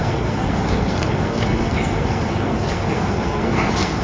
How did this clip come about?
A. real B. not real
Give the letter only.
B